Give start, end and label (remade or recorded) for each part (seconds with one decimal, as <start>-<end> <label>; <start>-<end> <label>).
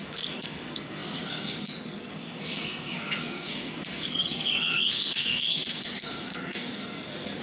0.0-7.4 remade